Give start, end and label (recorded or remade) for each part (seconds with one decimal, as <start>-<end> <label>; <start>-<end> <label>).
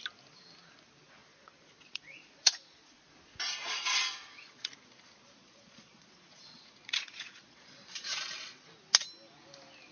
0.0-1.2 recorded; 1.2-3.1 remade; 3.1-3.6 recorded; 3.6-4.7 remade; 4.7-5.4 recorded; 5.4-8.7 remade; 8.7-9.9 recorded